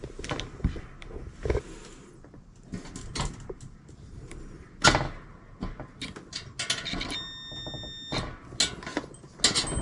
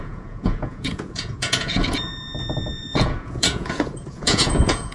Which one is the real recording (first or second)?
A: first